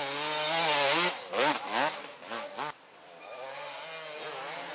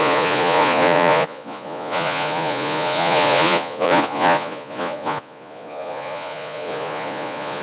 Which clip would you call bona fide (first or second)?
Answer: first